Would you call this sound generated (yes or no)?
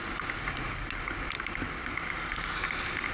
no